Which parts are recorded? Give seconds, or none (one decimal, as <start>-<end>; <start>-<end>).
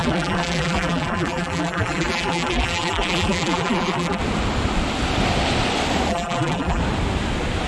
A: 4.2-6.1; 6.8-7.7